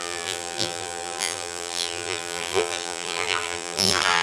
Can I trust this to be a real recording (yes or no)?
no